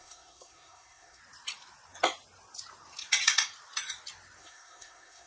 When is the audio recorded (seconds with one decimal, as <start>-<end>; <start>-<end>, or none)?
1.2-4.4